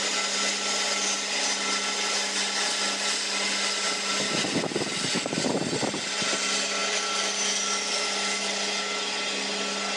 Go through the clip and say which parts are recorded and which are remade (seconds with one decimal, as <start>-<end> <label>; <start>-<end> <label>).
0.0-10.0 recorded